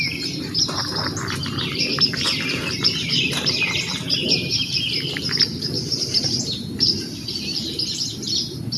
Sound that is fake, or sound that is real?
fake